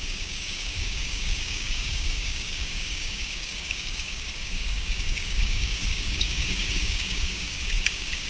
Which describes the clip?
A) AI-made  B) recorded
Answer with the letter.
A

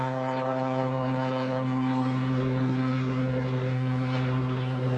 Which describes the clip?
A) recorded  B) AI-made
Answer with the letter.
B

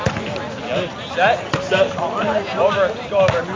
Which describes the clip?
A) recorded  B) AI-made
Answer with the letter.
A